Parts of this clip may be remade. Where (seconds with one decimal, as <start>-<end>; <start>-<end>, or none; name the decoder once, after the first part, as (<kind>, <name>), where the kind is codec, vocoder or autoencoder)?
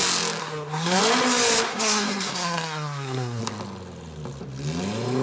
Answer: 0.4-1.0 (codec, SNAC); 1.7-3.4